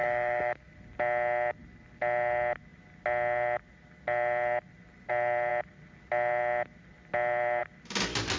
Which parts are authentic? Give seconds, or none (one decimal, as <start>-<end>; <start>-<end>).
0.6-8.4